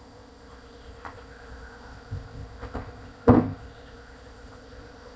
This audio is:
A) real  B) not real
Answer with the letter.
B